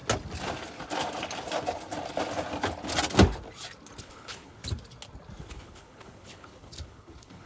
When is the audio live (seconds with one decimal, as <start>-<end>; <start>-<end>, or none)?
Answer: 0.0-4.0; 4.6-5.4